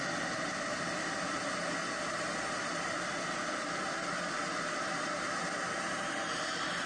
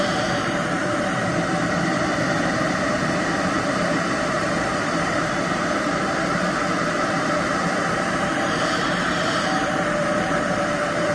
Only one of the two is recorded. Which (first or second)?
first